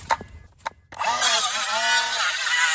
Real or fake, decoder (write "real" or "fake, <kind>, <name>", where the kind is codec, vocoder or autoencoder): real